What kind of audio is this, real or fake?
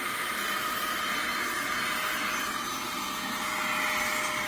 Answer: real